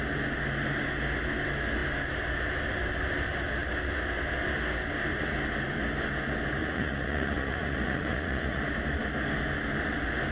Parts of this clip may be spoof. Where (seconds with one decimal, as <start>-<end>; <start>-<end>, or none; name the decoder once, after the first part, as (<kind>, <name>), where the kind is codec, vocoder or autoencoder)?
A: 6.6-8.6 (vocoder, Vocos)